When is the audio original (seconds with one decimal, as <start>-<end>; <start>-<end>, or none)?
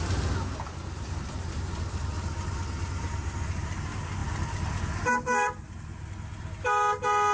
0.0-7.3